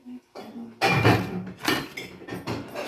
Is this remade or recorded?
recorded